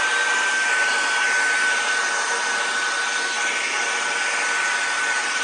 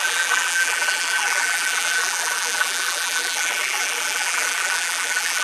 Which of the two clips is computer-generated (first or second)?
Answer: second